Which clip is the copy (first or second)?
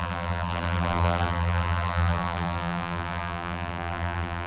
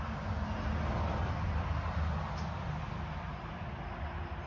first